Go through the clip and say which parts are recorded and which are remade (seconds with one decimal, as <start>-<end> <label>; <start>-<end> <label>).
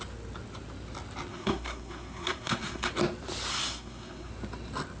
0.0-1.3 recorded; 1.3-2.9 remade; 2.9-3.5 recorded; 3.5-4.3 remade; 4.3-5.0 recorded